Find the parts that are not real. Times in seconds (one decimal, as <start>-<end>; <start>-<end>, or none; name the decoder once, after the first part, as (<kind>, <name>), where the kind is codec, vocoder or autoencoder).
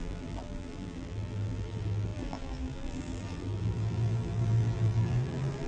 0.0-5.7 (vocoder, BigVGAN v2)